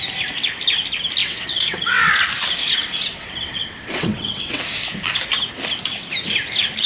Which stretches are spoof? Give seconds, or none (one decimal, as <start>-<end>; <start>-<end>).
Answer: 1.2-2.1; 3.1-4.6